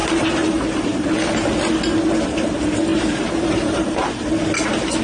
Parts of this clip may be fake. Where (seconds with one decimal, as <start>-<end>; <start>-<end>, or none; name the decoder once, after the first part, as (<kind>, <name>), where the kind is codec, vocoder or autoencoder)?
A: 0.0-1.3 (vocoder, BigVGAN v2); 2.9-4.1